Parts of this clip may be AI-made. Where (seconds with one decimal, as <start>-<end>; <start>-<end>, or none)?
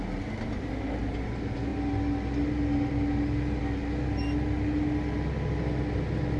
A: none